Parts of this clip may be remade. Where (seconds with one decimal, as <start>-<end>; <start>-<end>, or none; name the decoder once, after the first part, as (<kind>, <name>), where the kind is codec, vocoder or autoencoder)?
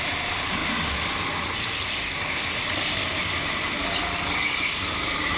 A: none